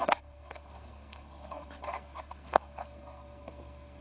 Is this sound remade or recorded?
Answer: remade